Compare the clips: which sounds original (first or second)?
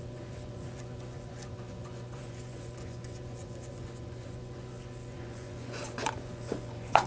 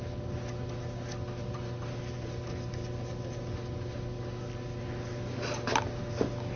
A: second